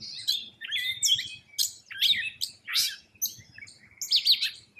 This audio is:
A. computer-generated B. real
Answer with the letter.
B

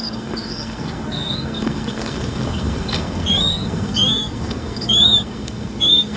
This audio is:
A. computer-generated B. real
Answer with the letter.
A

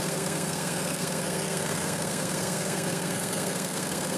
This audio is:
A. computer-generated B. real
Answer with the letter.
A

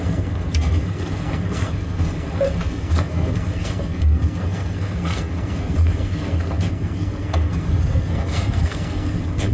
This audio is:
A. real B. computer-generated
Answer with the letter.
B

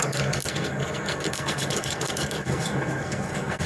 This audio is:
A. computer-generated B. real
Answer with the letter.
A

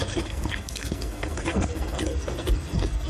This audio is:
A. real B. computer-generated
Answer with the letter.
B